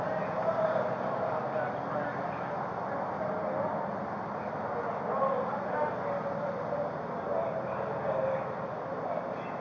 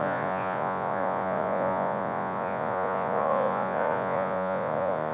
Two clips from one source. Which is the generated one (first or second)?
second